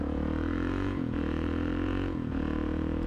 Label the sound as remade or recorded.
remade